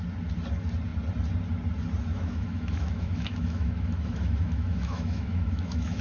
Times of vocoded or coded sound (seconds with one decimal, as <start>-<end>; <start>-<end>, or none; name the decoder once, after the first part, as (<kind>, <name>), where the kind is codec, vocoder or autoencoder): 2.1-6.0 (autoencoder, DAC-VAE)